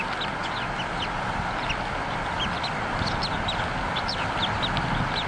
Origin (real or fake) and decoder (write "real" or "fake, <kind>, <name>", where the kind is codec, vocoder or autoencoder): real